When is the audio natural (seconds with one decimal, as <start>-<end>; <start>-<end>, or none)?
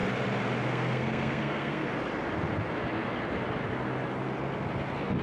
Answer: 0.0-0.7; 1.8-5.2